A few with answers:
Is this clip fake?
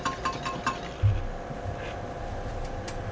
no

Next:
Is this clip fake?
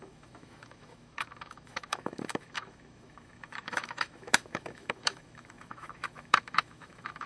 yes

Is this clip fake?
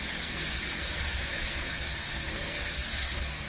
yes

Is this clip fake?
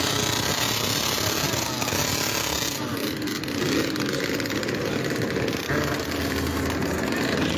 no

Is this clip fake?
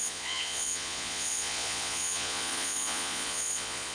yes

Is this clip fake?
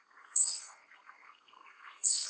yes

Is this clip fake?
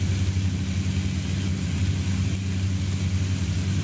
no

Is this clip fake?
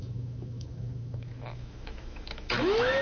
yes